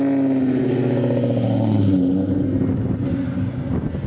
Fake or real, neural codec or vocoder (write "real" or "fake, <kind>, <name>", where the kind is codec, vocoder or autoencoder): real